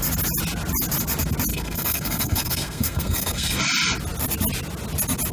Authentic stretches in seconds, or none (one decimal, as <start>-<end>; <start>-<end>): 0.0-1.5; 3.6-5.3